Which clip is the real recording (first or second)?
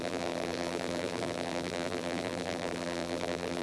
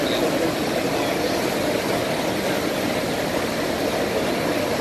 second